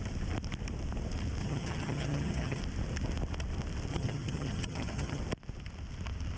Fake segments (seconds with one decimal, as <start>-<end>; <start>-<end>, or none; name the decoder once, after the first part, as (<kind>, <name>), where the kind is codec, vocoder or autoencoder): 1.4-2.6 (vocoder, HiFi-GAN); 3.9-5.2

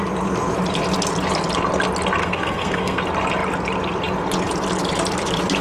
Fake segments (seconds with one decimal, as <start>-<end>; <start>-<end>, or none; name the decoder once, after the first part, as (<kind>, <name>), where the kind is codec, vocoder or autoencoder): 2.2-3.0 (codec, SNAC)

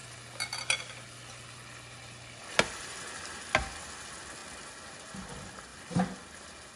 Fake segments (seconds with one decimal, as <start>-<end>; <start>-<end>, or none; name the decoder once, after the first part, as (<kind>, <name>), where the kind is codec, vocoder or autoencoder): none

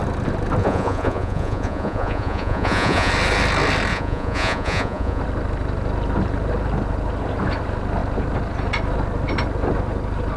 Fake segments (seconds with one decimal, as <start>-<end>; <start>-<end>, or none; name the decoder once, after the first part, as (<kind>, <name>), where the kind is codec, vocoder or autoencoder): 0.6-3.1 (vocoder, Vocos); 3.9-5.2

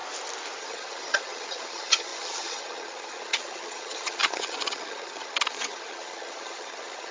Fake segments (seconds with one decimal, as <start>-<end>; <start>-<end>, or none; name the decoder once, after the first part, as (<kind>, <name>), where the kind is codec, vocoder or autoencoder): 0.6-7.1 (vocoder, HiFi-GAN)

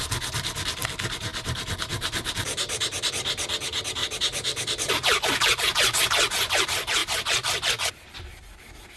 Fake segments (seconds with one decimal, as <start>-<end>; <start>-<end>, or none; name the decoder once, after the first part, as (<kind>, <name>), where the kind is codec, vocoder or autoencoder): 4.0-5.6 (vocoder, BigVGAN v2)